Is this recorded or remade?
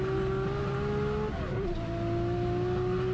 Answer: recorded